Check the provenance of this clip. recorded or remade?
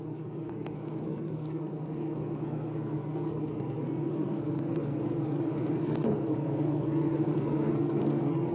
remade